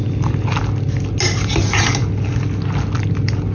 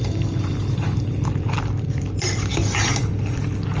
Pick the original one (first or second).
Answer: first